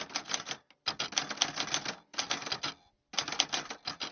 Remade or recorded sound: recorded